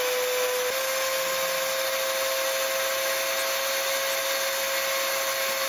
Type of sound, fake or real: real